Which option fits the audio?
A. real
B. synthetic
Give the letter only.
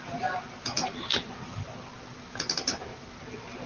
A